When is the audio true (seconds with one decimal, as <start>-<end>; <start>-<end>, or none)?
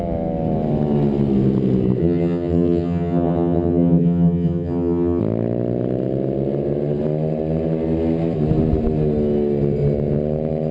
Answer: 0.0-2.0; 5.2-10.7